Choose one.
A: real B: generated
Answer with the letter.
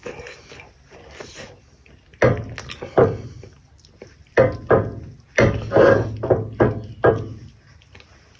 A